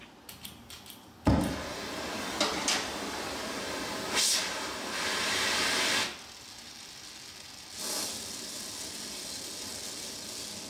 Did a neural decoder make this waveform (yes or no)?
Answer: no